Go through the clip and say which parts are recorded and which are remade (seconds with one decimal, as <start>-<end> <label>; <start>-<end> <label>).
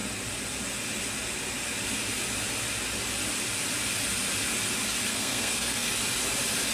0.0-5.1 recorded; 5.1-5.9 remade; 5.9-6.7 recorded